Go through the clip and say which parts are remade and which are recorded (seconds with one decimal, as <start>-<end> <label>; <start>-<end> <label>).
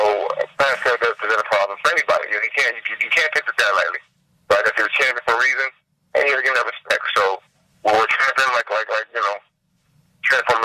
0.0-10.6 recorded